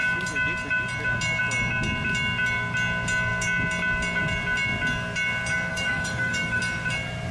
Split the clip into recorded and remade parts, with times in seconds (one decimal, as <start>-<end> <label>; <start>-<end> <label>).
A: 0.0-5.7 recorded; 5.7-6.6 remade; 6.6-7.3 recorded